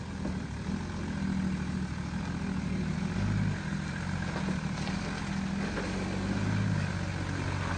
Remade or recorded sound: recorded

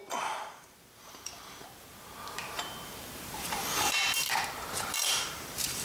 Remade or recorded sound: remade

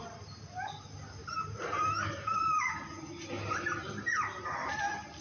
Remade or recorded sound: recorded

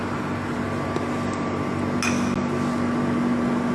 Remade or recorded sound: recorded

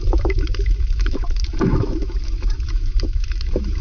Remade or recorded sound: remade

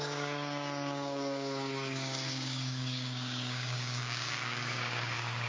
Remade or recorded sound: remade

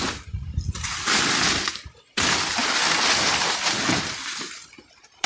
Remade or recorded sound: recorded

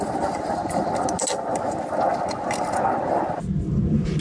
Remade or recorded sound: recorded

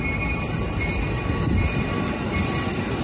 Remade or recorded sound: recorded